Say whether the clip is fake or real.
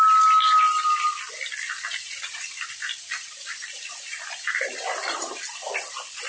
real